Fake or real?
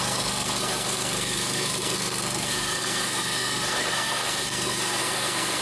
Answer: fake